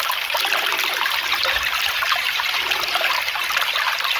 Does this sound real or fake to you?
real